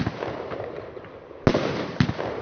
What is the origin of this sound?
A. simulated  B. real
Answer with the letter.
B